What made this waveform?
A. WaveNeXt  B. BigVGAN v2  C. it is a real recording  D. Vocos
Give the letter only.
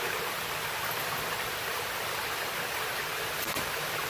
C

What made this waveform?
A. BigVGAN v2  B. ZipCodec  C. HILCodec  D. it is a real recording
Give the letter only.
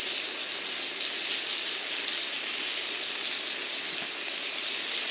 D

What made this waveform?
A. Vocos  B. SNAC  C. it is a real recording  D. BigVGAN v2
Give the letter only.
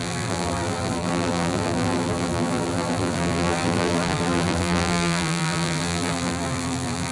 D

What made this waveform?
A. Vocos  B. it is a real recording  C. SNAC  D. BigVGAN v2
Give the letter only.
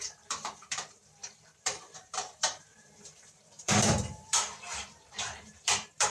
D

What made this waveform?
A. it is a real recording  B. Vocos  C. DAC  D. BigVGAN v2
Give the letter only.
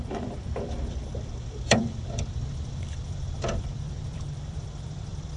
D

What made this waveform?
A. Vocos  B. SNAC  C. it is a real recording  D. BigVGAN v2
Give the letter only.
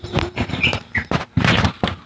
D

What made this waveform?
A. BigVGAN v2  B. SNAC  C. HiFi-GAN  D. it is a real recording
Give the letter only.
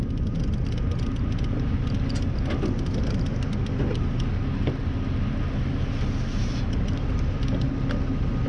D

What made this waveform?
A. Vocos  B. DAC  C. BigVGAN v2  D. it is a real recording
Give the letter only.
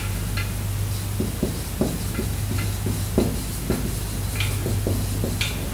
D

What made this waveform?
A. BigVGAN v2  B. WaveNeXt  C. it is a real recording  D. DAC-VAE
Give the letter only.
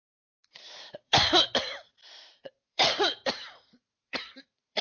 A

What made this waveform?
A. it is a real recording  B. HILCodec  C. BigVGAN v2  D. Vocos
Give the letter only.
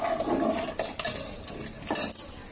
A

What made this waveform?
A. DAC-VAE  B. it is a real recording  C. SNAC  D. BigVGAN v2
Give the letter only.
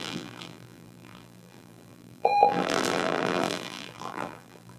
D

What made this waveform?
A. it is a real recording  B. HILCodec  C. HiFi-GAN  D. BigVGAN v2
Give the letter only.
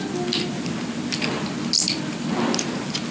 A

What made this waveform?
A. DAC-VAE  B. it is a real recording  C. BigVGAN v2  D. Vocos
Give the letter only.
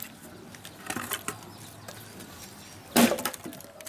B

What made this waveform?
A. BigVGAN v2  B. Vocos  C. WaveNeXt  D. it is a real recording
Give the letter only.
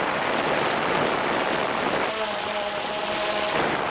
D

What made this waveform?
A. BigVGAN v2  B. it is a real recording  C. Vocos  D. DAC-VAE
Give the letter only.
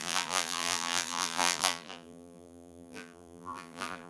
A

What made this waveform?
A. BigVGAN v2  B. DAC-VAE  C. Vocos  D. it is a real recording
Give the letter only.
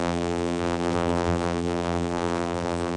A